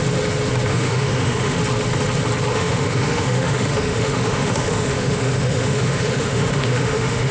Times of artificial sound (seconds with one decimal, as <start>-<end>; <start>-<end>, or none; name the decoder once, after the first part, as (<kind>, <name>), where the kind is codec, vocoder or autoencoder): 0.7-1.6 (autoencoder, DAC-VAE); 2.5-7.3